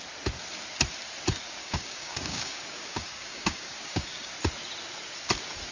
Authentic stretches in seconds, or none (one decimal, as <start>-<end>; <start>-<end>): 0.0-1.6; 4.3-5.7